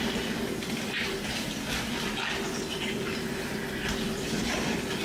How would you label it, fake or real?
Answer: real